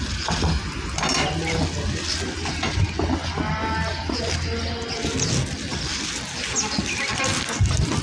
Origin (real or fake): real